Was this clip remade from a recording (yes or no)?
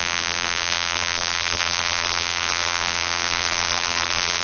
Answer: yes